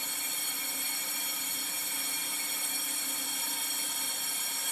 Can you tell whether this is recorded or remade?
recorded